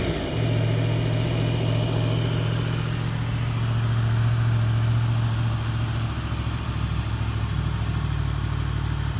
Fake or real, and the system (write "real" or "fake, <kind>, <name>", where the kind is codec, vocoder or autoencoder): real